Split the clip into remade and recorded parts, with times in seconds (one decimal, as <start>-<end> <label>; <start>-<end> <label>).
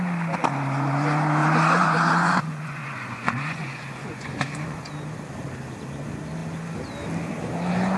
0.0-1.4 recorded; 1.4-4.9 remade; 4.9-8.0 recorded